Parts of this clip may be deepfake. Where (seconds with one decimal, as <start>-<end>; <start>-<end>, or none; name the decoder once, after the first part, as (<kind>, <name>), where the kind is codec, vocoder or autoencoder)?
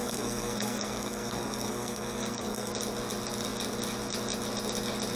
0.0-2.7 (codec, SNAC)